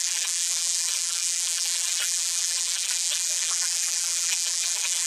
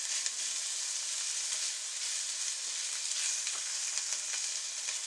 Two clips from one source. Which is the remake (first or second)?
first